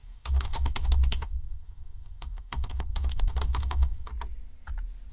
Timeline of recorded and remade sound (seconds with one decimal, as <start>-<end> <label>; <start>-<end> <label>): 0.0-4.1 remade; 4.1-5.1 recorded